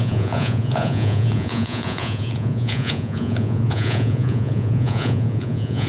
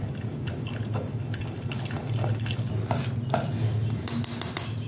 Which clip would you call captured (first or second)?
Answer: second